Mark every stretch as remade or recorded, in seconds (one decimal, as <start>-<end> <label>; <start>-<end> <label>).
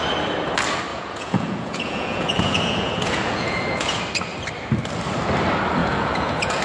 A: 0.0-0.9 recorded; 0.9-4.0 remade; 4.0-5.8 recorded; 5.8-6.6 remade